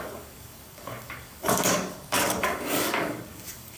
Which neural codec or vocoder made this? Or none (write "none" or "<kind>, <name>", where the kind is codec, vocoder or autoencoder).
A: codec, DAC